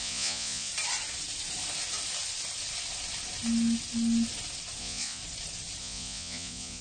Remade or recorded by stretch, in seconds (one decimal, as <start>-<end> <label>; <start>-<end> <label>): 0.0-0.7 remade; 0.7-4.8 recorded; 4.8-5.2 remade; 5.2-5.8 recorded; 5.8-6.8 remade